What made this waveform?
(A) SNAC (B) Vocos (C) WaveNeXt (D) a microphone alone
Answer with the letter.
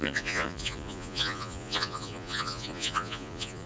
B